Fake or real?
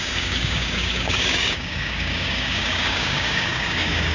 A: fake